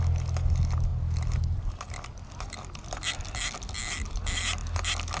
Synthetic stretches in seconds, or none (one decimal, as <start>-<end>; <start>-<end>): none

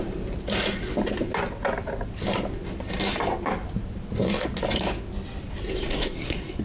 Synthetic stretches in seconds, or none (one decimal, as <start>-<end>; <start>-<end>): 5.9-6.6

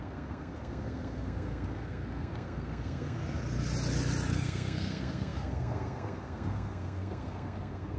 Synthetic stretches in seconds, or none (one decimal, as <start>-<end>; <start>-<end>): 0.0-3.2; 4.3-8.0

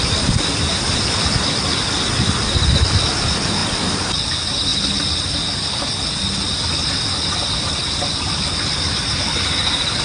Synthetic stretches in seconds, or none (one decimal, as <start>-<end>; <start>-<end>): none